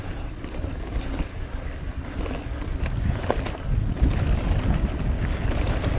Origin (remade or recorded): recorded